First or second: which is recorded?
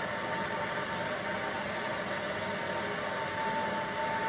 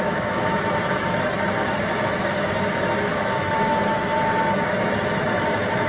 first